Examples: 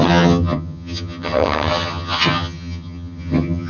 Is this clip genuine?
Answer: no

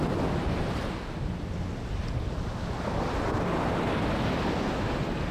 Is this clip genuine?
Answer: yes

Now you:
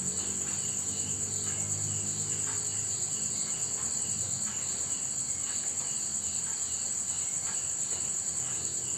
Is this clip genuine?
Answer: yes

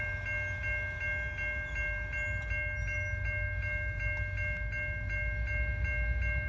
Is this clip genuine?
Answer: yes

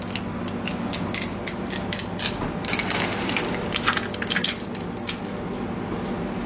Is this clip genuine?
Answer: yes